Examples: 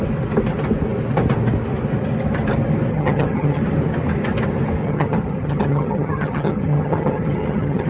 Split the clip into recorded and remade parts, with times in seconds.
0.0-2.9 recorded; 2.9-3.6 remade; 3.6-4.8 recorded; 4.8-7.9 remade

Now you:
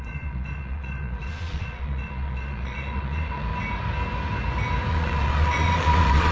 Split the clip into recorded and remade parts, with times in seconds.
0.0-3.5 remade; 3.5-4.9 recorded; 4.9-6.3 remade

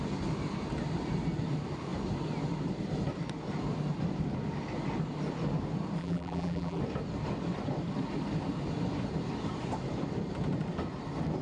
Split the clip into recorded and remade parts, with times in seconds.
0.0-6.0 recorded; 6.0-6.8 remade; 6.8-11.4 recorded

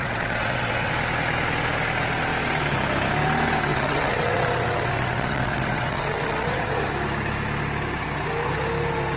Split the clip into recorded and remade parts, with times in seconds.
0.0-0.9 remade; 0.9-3.7 recorded; 3.7-6.7 remade; 6.7-9.2 recorded